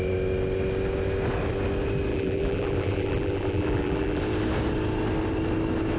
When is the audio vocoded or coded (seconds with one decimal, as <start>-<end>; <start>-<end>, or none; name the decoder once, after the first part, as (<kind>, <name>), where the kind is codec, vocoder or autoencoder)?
2.1-4.2 (vocoder, BigVGAN v2)